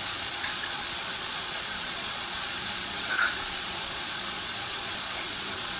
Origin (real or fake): fake